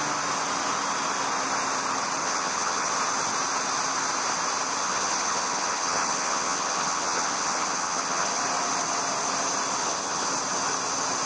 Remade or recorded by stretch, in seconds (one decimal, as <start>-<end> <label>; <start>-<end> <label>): 0.0-2.2 recorded; 2.2-2.9 remade; 2.9-4.8 recorded; 4.8-8.4 remade; 8.4-9.8 recorded; 9.8-10.3 remade; 10.3-11.3 recorded